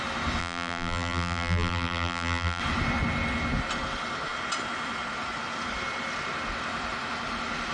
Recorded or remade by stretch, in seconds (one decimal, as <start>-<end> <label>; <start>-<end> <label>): 0.0-0.4 recorded; 0.4-2.6 remade; 2.6-7.7 recorded